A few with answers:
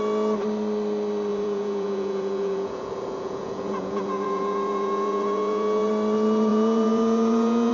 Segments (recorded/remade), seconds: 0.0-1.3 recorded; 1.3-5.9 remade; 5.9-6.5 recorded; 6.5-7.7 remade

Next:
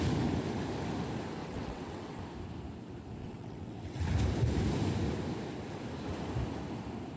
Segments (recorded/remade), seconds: 0.0-1.4 recorded; 1.4-2.2 remade; 2.2-3.2 recorded; 3.2-4.1 remade; 4.1-7.2 recorded

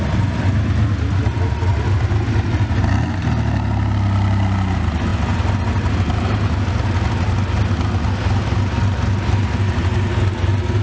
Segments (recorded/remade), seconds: 0.0-10.8 recorded

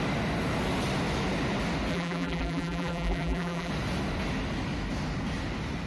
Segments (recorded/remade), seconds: 0.0-1.9 recorded; 1.9-3.7 remade; 3.7-5.9 recorded

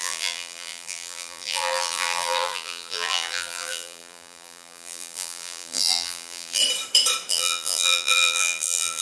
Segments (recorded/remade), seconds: 0.0-6.6 remade; 6.6-7.3 recorded; 7.3-9.0 remade

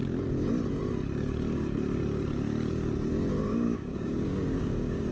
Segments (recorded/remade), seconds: 0.0-3.5 recorded; 3.5-5.1 remade

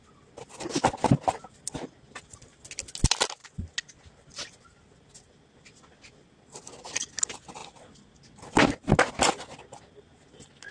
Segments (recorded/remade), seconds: 0.0-10.7 recorded

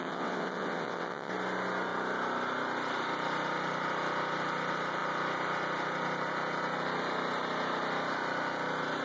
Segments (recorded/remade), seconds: 0.0-1.3 remade; 1.3-9.0 recorded